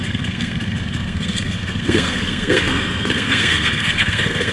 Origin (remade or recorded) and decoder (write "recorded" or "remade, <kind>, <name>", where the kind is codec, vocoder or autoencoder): remade, codec, SNAC